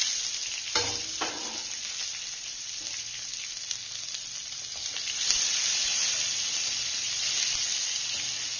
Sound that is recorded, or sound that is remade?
recorded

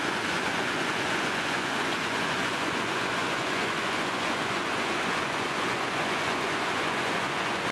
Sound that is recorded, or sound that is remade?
remade